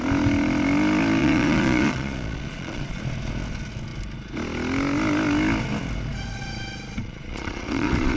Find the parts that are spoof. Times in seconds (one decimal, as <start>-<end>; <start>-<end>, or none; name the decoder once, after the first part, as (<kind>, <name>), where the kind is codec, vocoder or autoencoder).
1.2-3.0 (vocoder, Vocos); 7.0-8.2